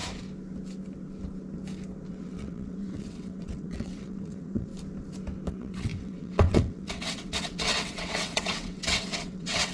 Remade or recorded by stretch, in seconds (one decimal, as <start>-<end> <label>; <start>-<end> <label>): 0.0-2.1 recorded; 2.1-4.7 remade; 4.7-5.5 recorded; 5.5-9.7 remade